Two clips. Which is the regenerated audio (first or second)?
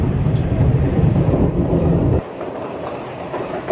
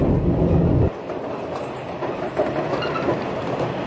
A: first